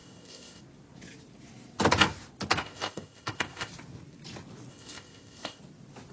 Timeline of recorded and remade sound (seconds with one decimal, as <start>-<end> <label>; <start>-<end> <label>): 0.0-0.6 remade; 0.6-2.6 recorded; 2.6-3.7 remade; 3.7-4.7 recorded; 4.7-5.6 remade; 5.6-6.1 recorded